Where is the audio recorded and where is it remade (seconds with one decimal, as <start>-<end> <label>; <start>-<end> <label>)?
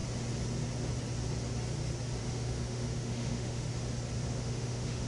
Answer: 0.0-2.2 recorded; 2.2-3.7 remade; 3.7-4.3 recorded; 4.3-5.1 remade